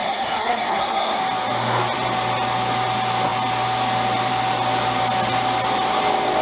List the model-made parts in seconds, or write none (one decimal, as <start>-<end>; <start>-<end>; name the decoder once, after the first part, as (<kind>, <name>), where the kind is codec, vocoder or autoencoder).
0.0-1.2 (codec, SNAC)